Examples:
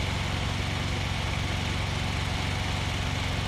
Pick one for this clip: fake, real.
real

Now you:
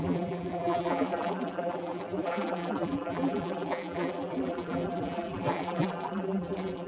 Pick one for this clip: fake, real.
fake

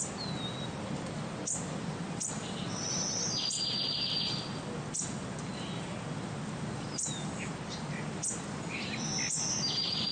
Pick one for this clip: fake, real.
real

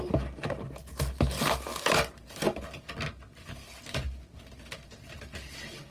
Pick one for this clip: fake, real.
real